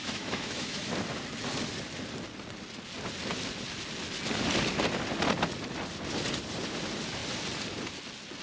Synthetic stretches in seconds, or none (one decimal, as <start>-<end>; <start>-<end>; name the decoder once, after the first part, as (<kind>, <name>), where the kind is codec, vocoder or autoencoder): 0.0-0.9 (autoencoder, DAC-VAE)